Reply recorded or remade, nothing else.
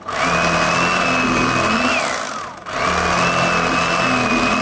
recorded